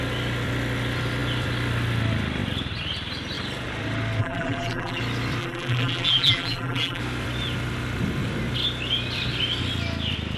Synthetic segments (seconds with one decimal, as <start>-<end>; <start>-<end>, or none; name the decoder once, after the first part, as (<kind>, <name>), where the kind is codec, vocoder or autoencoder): 4.2-5.0 (vocoder, BigVGAN v2); 5.4-7.0